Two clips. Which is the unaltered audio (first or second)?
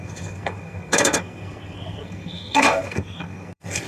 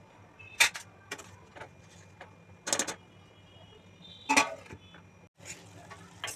second